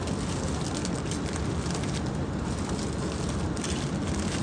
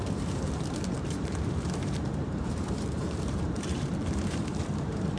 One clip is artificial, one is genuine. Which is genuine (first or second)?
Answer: first